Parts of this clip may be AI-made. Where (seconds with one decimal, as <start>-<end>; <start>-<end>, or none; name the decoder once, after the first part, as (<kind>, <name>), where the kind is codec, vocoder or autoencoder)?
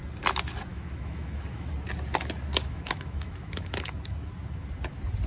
0.7-1.7 (autoencoder, DAC-VAE); 2.6-3.9